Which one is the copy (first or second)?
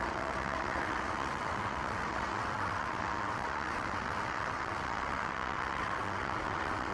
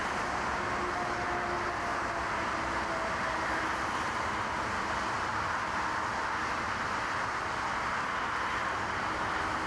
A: first